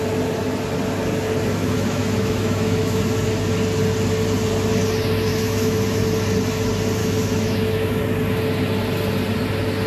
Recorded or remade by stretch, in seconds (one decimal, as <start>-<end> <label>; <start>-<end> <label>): 0.0-1.6 recorded; 1.6-3.0 remade; 3.0-5.3 recorded; 5.3-6.0 remade; 6.0-7.0 recorded; 7.0-8.0 remade; 8.0-9.9 recorded